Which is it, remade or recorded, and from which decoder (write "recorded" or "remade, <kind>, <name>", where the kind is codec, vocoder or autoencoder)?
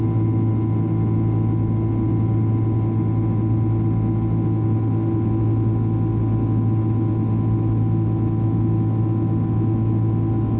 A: recorded